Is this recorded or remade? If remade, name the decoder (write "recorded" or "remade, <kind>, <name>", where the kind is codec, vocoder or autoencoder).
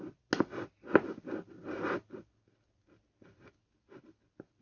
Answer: recorded